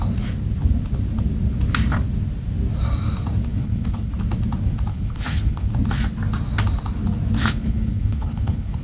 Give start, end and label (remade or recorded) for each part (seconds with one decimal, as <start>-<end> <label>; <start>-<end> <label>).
0.0-3.5 recorded; 3.5-4.1 remade; 4.1-4.9 recorded; 4.9-5.7 remade; 5.7-7.4 recorded; 7.4-8.8 remade